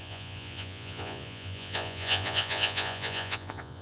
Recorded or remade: remade